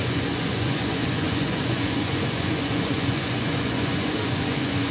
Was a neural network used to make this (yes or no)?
yes